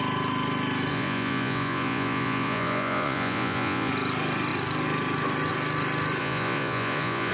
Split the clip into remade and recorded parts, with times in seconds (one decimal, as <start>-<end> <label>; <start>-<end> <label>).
0.0-0.9 recorded; 0.9-3.9 remade; 3.9-6.2 recorded; 6.2-7.3 remade